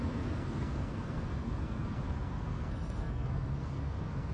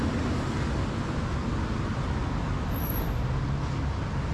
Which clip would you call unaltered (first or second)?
second